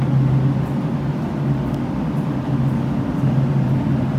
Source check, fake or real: real